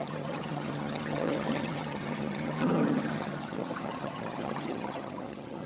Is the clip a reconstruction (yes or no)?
yes